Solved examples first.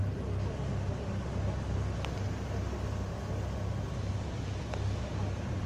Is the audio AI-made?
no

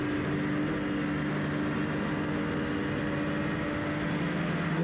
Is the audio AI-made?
no